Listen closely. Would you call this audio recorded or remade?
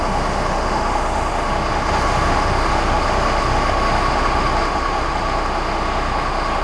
remade